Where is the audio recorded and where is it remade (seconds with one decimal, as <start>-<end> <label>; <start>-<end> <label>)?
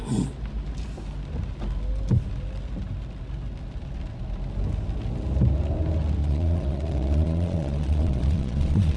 0.0-6.2 recorded; 6.2-9.0 remade